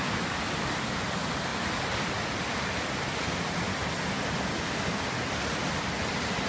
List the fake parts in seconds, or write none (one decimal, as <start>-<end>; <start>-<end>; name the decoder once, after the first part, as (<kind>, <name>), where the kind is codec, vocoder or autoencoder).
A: none